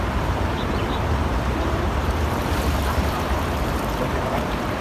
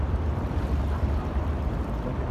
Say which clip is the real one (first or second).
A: second